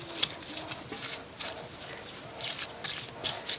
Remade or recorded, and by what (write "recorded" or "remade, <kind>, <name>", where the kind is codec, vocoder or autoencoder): recorded